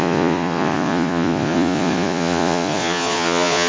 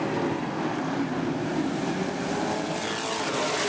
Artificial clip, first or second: first